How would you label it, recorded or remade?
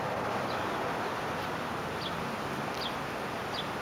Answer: recorded